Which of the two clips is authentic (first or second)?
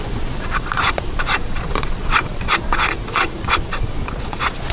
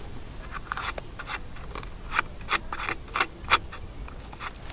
second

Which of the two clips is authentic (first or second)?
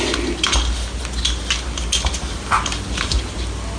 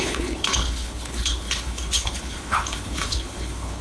first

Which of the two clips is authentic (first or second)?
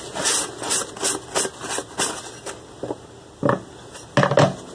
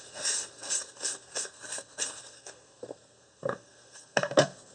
first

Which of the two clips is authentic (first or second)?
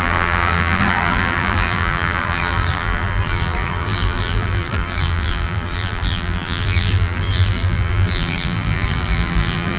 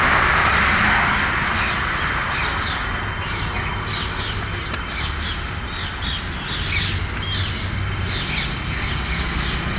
second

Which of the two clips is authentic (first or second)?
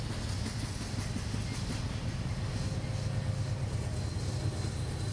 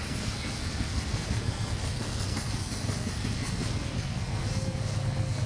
first